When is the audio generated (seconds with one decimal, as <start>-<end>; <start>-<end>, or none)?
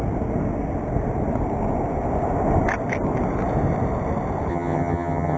4.5-5.4